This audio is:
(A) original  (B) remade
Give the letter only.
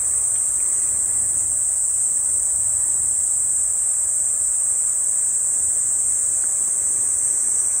A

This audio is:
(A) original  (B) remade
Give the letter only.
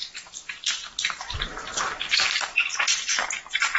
B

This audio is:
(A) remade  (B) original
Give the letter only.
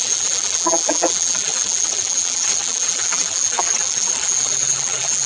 A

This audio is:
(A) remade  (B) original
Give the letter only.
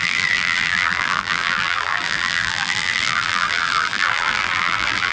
A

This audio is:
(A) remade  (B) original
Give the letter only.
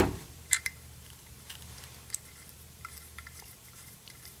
A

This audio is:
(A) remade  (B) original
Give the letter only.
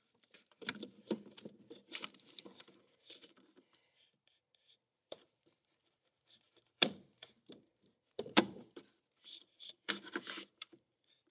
A